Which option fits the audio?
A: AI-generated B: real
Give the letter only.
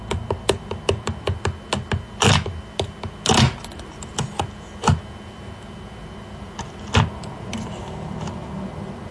B